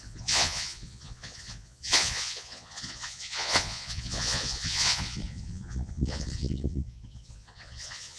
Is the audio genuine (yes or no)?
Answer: no